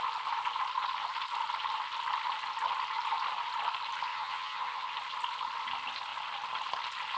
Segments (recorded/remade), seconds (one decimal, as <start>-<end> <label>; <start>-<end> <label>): 0.0-4.1 recorded; 4.1-4.9 remade; 4.9-7.2 recorded